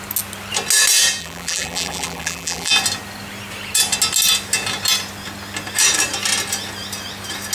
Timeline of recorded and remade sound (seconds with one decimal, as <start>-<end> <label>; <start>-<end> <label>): 0.0-1.2 recorded; 1.2-2.7 remade; 2.7-7.5 recorded